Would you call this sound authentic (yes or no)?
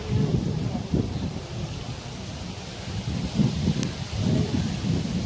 yes